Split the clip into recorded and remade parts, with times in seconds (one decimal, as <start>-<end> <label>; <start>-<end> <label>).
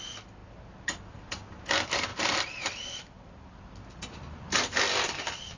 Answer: 0.0-2.1 recorded; 2.1-5.6 remade